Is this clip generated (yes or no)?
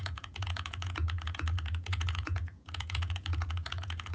yes